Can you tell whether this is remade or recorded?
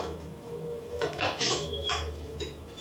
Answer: remade